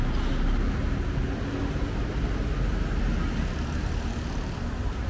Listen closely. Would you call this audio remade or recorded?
recorded